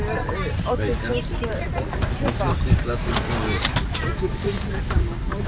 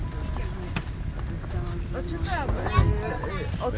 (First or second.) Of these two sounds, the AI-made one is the first